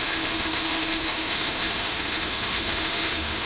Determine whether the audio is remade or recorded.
remade